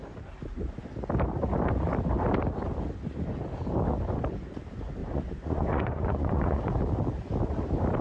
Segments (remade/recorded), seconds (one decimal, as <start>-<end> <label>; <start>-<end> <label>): 0.0-5.0 recorded; 5.0-6.7 remade; 6.7-8.0 recorded